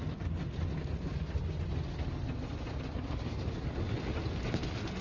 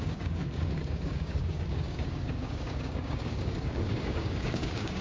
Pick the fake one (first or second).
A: second